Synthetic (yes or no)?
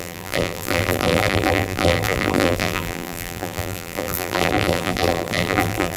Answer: yes